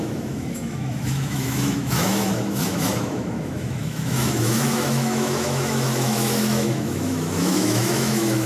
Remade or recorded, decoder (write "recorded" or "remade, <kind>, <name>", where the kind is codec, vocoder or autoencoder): remade, autoencoder, DAC-VAE